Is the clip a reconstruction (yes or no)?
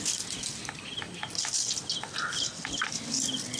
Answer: no